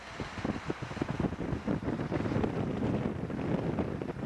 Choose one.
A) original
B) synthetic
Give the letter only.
A